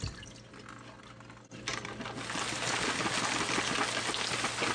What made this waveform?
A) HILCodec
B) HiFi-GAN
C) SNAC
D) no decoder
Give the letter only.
D